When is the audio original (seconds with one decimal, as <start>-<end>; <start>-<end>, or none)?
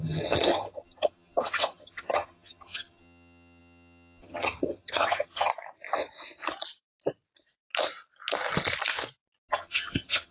5.5-9.5